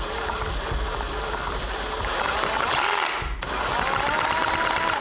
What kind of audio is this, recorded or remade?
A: recorded